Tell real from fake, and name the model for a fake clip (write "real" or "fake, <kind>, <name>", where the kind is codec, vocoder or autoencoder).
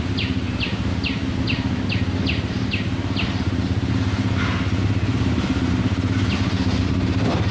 real